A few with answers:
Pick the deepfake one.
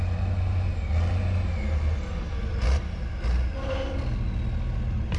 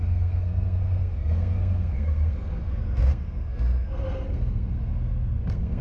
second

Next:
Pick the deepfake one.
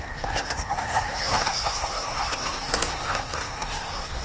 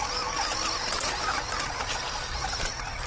first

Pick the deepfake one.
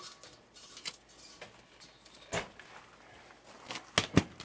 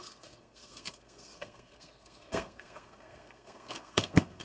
second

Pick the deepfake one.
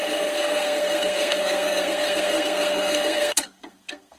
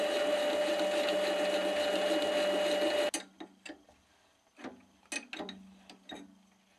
first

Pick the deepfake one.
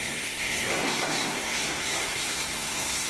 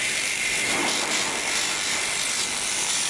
first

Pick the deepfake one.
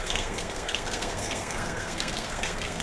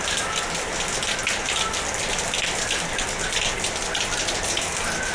first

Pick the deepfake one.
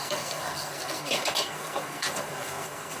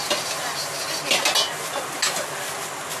first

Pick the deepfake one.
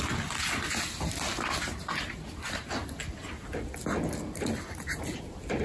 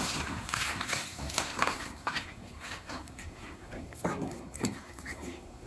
second